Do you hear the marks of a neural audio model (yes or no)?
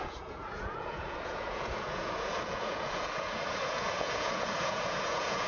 yes